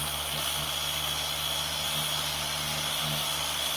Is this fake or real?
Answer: real